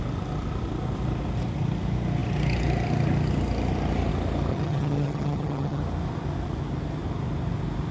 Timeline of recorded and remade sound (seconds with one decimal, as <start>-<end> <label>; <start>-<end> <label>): 0.0-4.5 recorded; 4.5-5.8 remade; 5.8-7.9 recorded